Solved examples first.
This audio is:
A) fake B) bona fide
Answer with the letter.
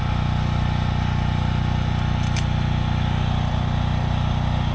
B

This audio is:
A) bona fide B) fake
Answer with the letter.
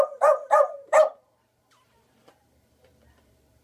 B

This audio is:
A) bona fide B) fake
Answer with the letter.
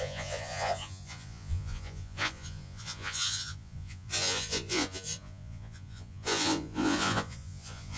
B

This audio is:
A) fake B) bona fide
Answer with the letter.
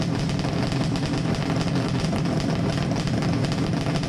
B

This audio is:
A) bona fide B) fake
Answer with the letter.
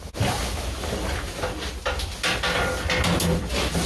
A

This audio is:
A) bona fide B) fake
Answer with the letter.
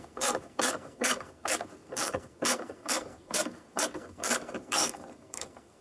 B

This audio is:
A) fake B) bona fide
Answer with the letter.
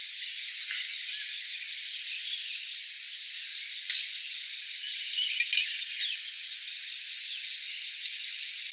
B